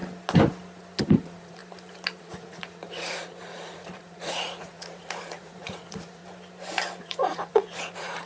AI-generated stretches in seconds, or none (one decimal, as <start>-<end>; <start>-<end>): 1.0-1.6; 2.2-6.2; 7.0-8.3